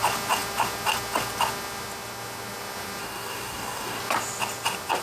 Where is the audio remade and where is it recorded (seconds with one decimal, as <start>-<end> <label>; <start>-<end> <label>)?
0.0-3.0 recorded; 3.0-4.0 remade; 4.0-5.0 recorded